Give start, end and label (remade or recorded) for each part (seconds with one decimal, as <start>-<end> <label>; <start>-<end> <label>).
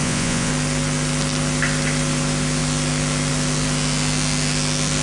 0.0-0.5 remade; 0.5-5.0 recorded